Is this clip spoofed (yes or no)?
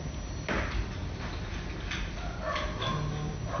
no